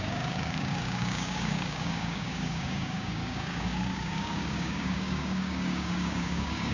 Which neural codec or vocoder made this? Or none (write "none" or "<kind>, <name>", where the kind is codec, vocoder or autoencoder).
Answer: codec, DAC